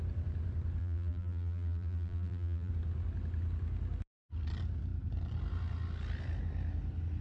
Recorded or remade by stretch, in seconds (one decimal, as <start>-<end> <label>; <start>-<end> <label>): 0.0-0.8 recorded; 0.8-2.7 remade; 2.7-7.2 recorded

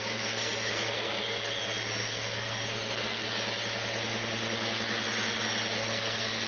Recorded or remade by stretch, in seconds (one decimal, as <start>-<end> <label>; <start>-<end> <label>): 0.0-1.6 remade; 1.6-2.0 recorded; 2.0-3.3 remade; 3.3-5.8 recorded; 5.8-6.5 remade

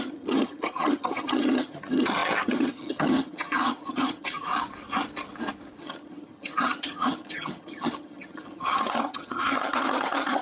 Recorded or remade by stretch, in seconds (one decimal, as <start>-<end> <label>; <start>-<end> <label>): 0.0-4.5 remade; 4.5-5.8 recorded; 5.8-10.4 remade

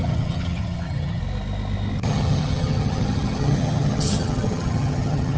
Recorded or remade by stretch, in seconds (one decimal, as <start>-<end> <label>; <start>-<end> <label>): 0.0-1.2 remade; 1.2-2.0 recorded; 2.0-5.4 remade

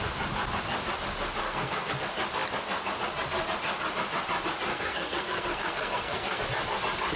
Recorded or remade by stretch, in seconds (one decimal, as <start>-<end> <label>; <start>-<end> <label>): 0.0-1.4 recorded; 1.4-1.9 remade; 1.9-4.7 recorded; 4.7-6.4 remade; 6.4-7.2 recorded

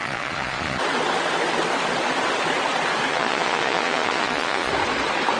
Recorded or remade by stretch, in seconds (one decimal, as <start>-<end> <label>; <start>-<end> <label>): 0.0-0.8 remade; 0.8-3.1 recorded; 3.1-4.7 remade; 4.7-5.4 recorded

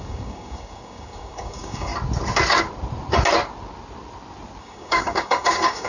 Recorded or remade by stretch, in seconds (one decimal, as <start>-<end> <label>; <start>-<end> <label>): 0.0-1.9 remade; 1.9-4.6 recorded; 4.6-5.9 remade